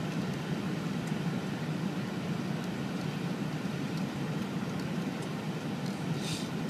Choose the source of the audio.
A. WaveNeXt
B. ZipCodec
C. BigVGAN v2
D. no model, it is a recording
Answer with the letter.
D